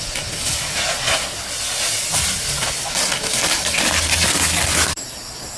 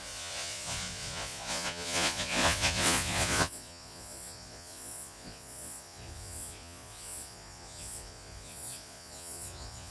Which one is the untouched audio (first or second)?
first